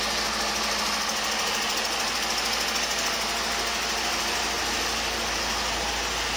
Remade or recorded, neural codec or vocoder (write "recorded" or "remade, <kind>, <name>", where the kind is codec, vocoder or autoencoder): recorded